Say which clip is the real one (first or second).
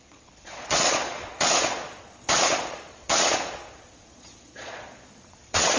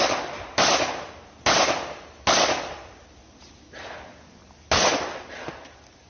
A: second